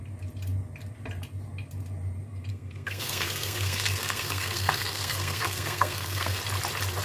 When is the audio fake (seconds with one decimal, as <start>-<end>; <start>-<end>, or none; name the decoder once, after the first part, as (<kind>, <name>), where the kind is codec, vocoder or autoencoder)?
2.5-6.4 (codec, SNAC)